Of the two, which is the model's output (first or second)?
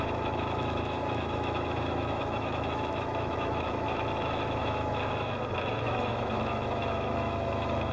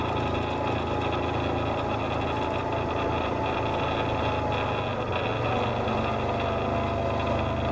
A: first